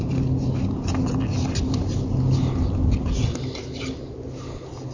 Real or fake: real